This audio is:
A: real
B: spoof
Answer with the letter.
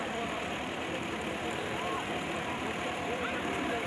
B